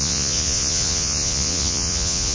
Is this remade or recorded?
remade